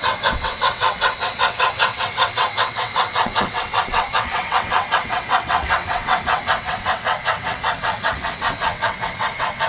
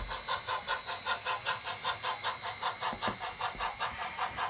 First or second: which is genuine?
second